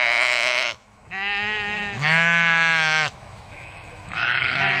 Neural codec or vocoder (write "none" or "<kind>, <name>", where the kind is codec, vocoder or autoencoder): autoencoder, DAC-VAE